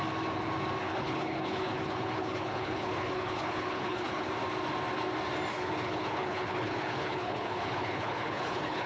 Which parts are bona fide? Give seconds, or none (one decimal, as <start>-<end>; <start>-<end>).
0.0-0.8; 4.3-5.5